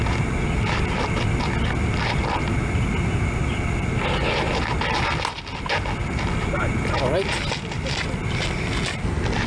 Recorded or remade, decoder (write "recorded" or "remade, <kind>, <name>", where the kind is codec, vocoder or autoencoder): recorded